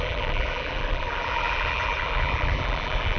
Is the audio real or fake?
fake